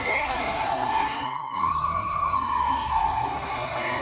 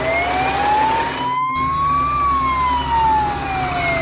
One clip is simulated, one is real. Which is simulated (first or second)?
first